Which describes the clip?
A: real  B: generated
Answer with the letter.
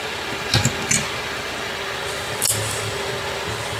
A